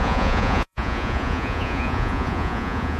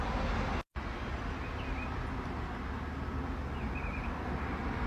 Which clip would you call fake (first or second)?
first